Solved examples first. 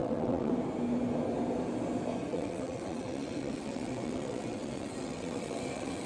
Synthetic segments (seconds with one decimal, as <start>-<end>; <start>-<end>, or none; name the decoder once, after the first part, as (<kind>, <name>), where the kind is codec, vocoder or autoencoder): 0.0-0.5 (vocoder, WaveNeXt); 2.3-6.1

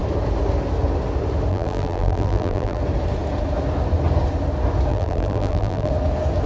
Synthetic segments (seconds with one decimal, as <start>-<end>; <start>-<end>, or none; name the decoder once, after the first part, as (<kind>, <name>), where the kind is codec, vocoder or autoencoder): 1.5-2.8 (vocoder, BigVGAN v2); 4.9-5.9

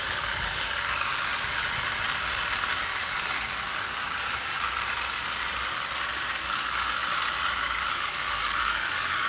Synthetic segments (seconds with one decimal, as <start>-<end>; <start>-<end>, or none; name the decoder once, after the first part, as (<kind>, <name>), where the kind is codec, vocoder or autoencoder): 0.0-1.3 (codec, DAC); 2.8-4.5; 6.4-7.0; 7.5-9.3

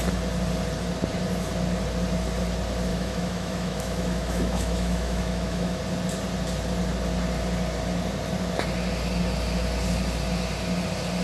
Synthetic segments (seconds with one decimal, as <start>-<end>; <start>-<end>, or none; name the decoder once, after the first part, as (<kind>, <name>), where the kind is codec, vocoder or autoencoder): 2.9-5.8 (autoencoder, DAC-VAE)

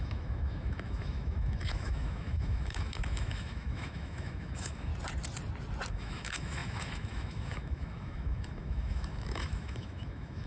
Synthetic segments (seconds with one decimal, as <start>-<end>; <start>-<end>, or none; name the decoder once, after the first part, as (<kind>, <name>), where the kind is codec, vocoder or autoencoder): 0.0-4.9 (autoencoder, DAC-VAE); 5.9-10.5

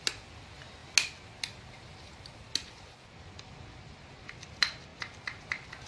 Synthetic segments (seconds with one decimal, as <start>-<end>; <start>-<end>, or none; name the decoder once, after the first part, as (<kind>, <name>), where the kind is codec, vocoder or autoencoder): 4.9-5.5 (vocoder, BigVGAN v2)

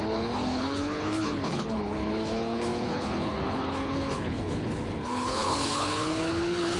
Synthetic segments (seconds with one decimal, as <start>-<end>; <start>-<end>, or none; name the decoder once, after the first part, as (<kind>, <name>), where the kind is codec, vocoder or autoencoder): 0.0-6.8 (codec, HILCodec)